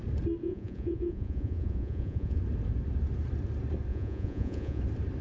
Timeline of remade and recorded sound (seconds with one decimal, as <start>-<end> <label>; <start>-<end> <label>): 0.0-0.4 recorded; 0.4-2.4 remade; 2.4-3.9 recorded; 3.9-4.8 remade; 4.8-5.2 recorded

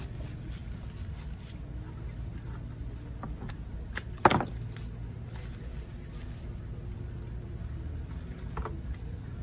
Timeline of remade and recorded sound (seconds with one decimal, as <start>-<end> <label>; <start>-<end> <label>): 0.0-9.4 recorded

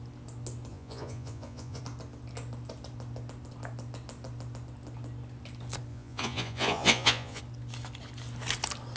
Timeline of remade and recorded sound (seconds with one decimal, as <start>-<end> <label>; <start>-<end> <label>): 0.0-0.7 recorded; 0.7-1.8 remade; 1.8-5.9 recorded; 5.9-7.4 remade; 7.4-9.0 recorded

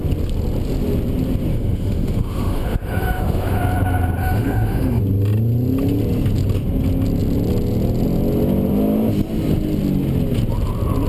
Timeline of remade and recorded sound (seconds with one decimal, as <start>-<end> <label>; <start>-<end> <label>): 0.0-1.5 recorded; 1.5-3.6 remade; 3.6-4.2 recorded; 4.2-5.0 remade; 5.0-11.1 recorded